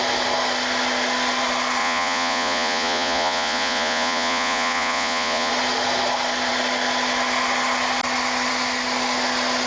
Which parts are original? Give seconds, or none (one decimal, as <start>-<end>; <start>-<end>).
0.0-1.8; 5.5-9.7

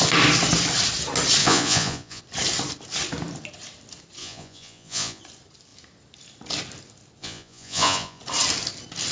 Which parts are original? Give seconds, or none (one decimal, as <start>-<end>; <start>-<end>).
0.0-1.4; 2.2-4.2; 5.2-7.2; 8.2-9.1

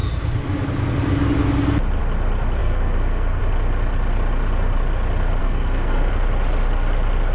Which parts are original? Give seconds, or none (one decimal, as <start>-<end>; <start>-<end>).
0.0-2.6; 3.4-5.4; 6.1-7.3

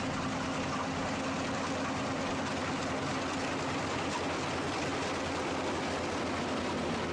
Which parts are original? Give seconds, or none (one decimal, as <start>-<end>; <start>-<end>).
0.0-7.1

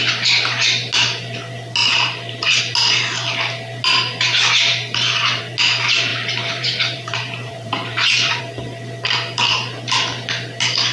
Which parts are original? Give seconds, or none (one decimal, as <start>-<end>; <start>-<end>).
0.0-1.8; 2.6-6.1; 8.4-10.9

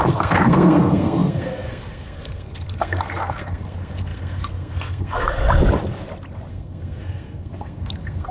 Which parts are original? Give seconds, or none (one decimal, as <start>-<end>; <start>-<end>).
5.4-6.5

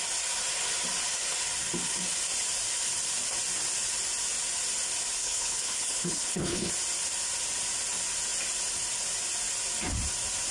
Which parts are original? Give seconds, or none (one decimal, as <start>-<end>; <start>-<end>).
0.0-5.2; 6.7-10.5

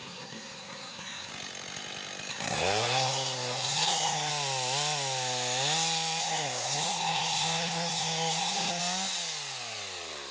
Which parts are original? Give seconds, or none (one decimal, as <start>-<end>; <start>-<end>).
1.3-2.3; 4.3-6.2; 8.8-10.3